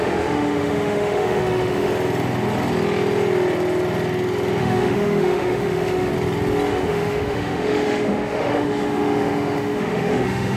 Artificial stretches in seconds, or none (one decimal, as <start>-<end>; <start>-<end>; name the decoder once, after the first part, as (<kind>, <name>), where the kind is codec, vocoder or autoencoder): 0.0-1.9 (autoencoder, DAC-VAE); 4.6-6.1; 6.7-10.6

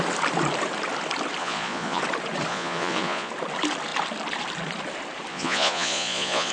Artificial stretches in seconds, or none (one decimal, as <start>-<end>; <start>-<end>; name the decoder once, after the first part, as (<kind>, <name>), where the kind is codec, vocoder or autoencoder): 1.4-2.0 (vocoder, Vocos); 2.5-3.3; 5.3-6.5